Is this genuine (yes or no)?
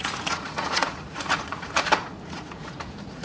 no